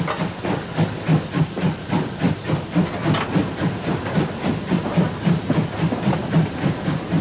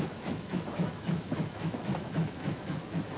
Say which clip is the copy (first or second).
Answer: second